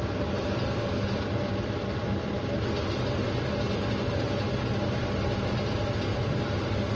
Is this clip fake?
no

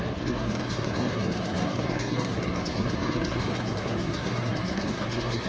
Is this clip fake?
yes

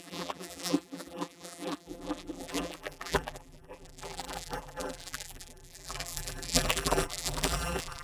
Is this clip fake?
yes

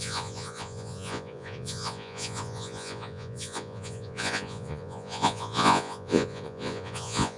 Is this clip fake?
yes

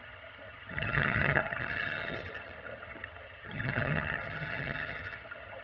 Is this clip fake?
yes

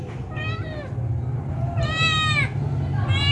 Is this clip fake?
no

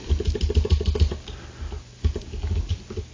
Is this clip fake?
no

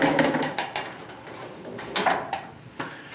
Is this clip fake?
no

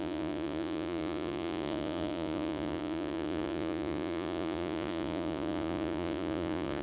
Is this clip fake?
yes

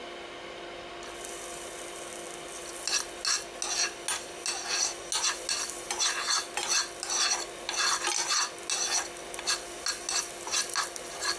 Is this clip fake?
no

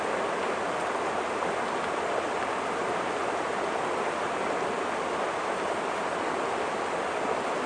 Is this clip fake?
no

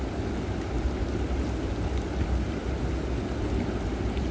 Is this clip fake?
no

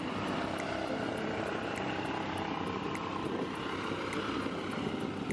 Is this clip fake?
yes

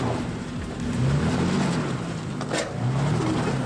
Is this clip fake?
no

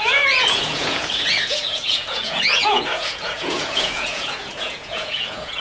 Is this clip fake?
yes